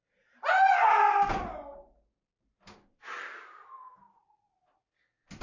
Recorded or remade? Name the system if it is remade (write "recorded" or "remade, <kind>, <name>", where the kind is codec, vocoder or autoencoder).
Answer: recorded